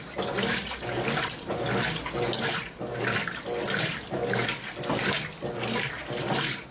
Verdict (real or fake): real